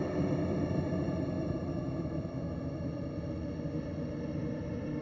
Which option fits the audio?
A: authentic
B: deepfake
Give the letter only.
A